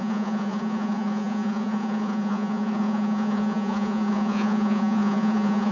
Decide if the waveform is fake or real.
fake